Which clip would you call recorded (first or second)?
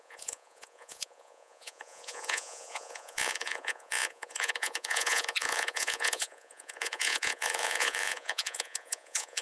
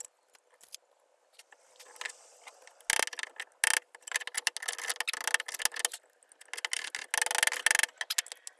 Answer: second